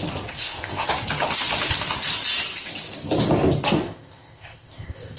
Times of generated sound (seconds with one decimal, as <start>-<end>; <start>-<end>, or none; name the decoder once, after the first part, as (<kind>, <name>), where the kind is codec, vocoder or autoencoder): 0.4-0.9 (codec, ZipCodec); 3.8-5.2